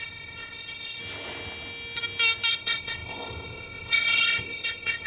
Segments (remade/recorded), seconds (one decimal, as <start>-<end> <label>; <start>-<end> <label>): 0.0-1.0 remade; 1.0-2.5 recorded; 2.5-5.1 remade